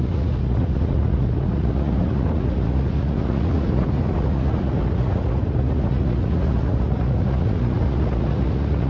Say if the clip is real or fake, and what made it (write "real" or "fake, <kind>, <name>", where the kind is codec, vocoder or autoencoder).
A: fake, vocoder, Vocos